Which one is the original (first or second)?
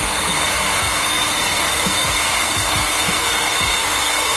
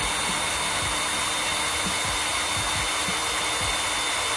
second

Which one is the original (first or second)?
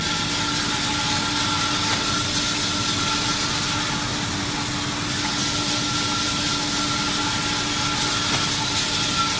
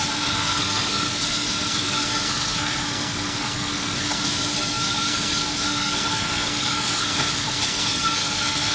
first